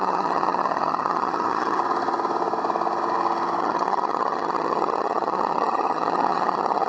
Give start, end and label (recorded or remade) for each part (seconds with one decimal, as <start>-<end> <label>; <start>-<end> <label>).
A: 0.0-1.8 remade; 1.8-3.6 recorded; 3.6-6.9 remade